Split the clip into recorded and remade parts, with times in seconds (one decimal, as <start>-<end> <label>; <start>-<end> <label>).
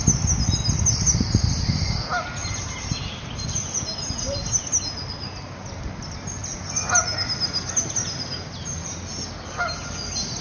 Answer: 0.0-2.4 recorded; 2.4-3.0 remade; 3.0-10.4 recorded